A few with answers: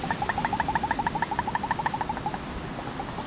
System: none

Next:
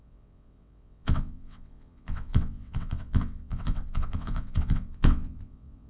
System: vocoder, WaveNeXt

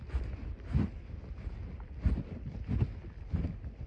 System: none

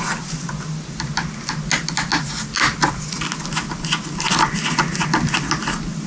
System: none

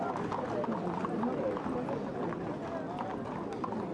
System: none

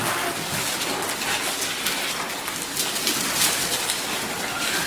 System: none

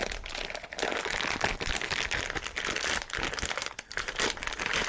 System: none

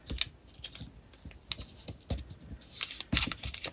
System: none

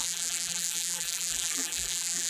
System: vocoder, BigVGAN v2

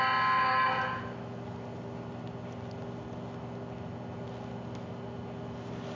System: none